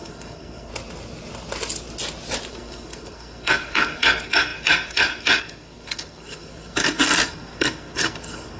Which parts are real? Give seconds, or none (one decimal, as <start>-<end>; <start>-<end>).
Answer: 0.7-2.5